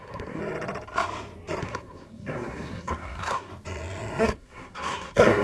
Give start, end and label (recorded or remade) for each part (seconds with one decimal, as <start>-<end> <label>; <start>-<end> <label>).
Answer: 0.0-0.4 remade; 0.4-1.6 recorded; 1.6-3.5 remade; 3.5-4.2 recorded; 4.2-5.4 remade